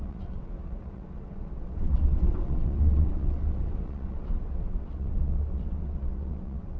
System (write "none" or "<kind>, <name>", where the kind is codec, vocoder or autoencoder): vocoder, WaveNeXt